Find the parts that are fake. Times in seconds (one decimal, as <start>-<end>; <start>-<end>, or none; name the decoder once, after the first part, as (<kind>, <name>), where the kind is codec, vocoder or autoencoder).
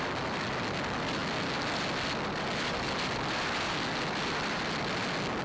none